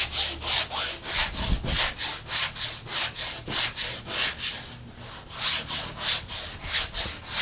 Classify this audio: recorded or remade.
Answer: recorded